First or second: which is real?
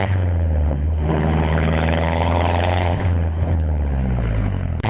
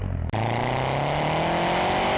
second